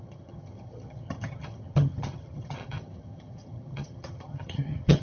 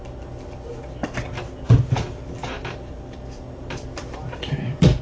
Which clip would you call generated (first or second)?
first